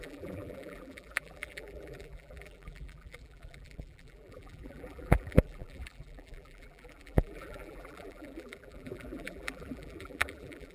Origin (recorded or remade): remade